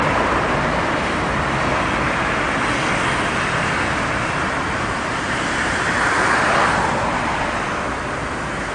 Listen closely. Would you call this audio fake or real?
real